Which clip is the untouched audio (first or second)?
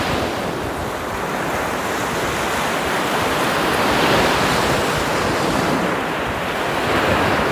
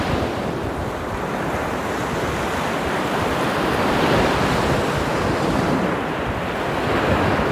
first